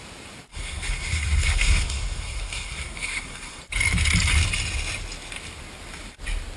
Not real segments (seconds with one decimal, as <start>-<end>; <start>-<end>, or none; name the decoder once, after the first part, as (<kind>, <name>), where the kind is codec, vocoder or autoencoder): 0.5-3.6 (codec, SNAC)